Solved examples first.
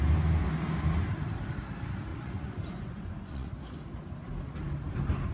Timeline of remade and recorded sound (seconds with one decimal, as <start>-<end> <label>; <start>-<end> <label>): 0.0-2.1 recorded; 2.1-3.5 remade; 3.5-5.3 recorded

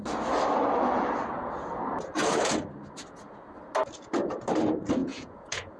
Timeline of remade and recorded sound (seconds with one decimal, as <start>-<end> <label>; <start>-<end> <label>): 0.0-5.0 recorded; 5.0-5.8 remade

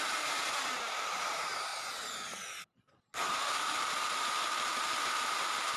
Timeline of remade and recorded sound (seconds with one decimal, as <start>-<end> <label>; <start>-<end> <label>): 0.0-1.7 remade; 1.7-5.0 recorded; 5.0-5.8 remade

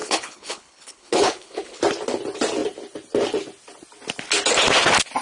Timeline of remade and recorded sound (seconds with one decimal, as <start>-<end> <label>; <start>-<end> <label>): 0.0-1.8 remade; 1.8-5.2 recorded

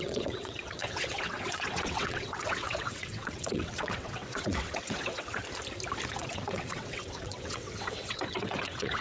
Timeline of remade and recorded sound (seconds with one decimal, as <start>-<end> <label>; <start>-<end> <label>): 0.0-5.4 remade; 5.4-6.1 recorded; 6.1-9.0 remade